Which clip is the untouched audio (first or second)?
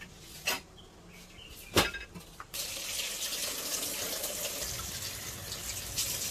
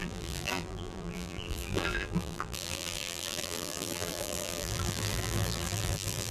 first